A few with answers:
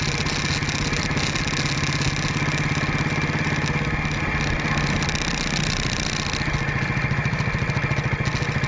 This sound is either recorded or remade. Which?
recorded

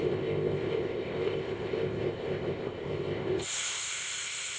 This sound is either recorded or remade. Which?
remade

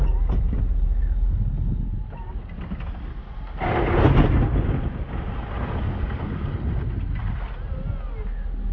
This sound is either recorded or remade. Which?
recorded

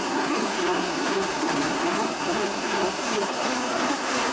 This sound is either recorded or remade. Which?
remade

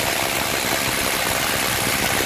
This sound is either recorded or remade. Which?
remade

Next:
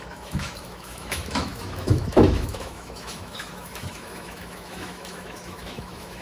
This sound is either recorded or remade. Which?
remade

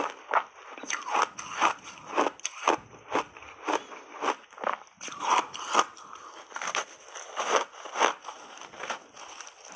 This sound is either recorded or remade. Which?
recorded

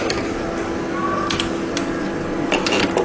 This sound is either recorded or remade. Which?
recorded